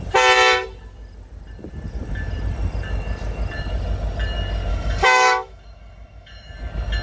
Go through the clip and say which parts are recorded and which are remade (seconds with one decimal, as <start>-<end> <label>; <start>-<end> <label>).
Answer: 0.0-4.7 recorded; 4.7-6.5 remade; 6.5-7.0 recorded